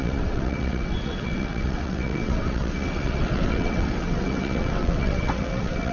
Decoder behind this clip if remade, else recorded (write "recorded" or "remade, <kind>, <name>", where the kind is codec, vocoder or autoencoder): remade, vocoder, WaveNeXt